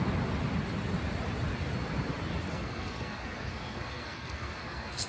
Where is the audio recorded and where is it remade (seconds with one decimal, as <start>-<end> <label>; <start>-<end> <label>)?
0.0-2.5 recorded; 2.5-5.1 remade